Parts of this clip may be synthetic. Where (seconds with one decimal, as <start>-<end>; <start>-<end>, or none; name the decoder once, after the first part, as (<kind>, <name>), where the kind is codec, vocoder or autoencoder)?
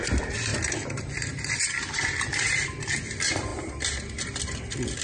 none